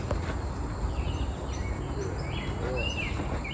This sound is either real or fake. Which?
real